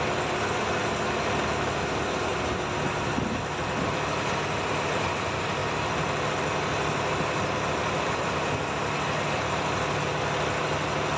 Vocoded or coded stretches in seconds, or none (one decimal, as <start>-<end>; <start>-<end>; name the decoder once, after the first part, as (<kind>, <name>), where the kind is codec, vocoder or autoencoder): none